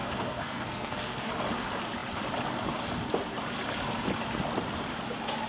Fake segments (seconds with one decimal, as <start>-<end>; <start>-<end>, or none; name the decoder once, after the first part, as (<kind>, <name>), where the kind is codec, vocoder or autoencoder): 0.0-1.3 (codec, SNAC)